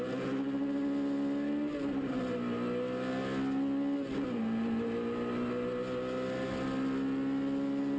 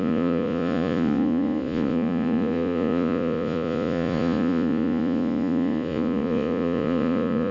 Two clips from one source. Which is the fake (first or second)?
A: second